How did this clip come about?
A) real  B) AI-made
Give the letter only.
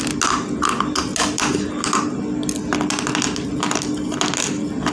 A